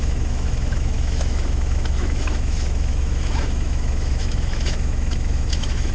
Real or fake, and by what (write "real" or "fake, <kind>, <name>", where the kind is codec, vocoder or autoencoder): fake, autoencoder, DAC-VAE